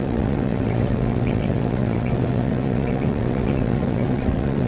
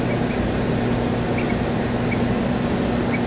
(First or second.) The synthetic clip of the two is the first